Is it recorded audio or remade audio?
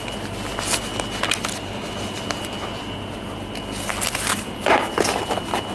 recorded